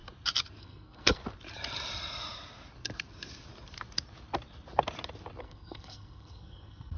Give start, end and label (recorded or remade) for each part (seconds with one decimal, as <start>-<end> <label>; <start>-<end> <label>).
0.0-0.6 recorded; 0.6-1.2 remade; 1.2-5.4 recorded; 5.4-7.0 remade